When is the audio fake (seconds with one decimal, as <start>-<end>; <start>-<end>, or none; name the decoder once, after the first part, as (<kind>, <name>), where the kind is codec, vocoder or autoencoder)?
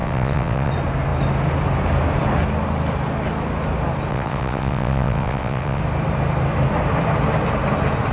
0.0-0.7 (vocoder, WaveNeXt); 4.1-5.8